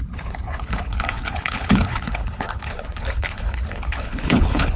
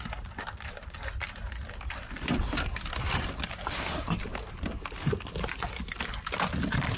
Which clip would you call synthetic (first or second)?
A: first